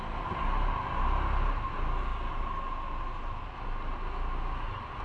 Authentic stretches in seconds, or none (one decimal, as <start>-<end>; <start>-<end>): 0.0-5.0